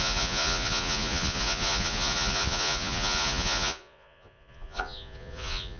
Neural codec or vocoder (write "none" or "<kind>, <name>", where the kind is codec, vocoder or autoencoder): vocoder, Vocos